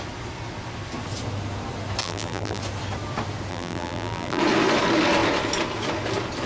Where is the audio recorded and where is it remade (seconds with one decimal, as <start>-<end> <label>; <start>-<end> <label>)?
0.0-2.0 recorded; 2.0-2.6 remade; 2.6-3.5 recorded; 3.5-4.4 remade; 4.4-6.5 recorded